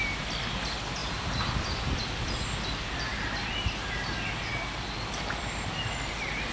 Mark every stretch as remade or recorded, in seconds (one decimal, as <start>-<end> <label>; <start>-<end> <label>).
0.0-1.0 recorded; 1.0-1.6 remade; 1.6-3.1 recorded; 3.1-3.9 remade; 3.9-6.5 recorded

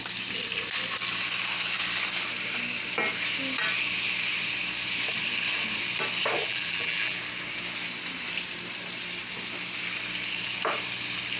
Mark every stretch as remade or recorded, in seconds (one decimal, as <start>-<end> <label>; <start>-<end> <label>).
0.0-6.4 recorded; 6.4-7.2 remade; 7.2-11.4 recorded